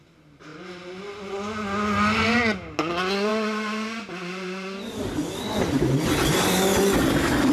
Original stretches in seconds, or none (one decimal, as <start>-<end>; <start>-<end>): 0.0-7.5